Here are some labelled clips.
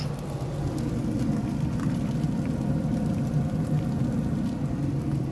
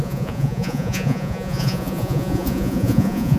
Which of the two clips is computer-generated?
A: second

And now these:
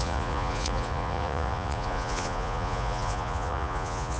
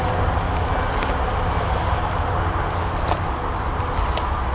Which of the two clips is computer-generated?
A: first